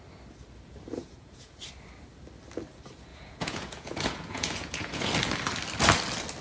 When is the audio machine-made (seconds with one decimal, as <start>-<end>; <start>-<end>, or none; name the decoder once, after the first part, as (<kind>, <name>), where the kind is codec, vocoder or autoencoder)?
1.0-1.6 (vocoder, Vocos); 3.1-5.1